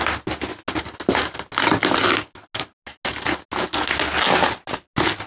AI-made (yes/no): no